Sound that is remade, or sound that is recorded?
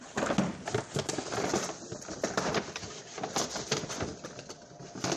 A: recorded